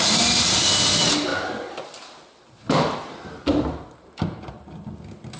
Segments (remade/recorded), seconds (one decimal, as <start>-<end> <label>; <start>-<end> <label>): 0.0-5.4 recorded